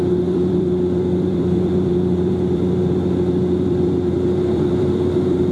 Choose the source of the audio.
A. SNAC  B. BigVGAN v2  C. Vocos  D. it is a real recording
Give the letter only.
B